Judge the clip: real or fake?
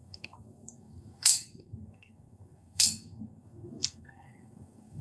fake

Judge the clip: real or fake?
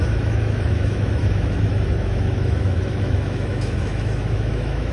fake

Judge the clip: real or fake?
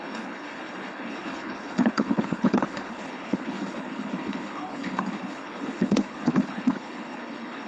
fake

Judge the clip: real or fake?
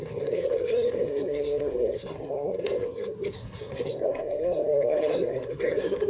fake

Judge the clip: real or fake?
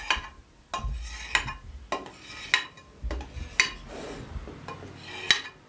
real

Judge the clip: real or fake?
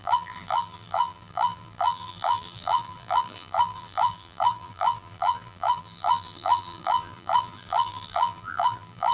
fake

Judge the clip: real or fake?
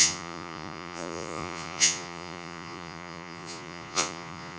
fake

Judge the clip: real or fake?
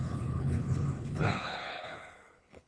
fake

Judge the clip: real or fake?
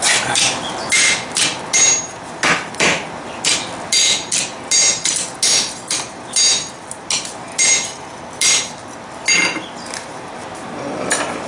real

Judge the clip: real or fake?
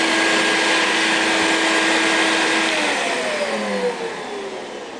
real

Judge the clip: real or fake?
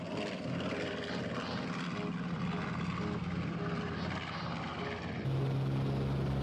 real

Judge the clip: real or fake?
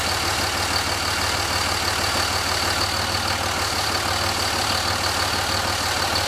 real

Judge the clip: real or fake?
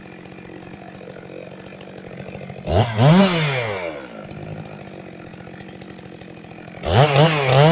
real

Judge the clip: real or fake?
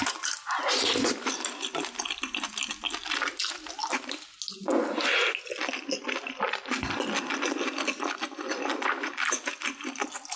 real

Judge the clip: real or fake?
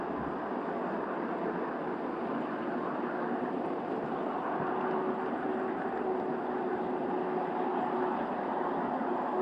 real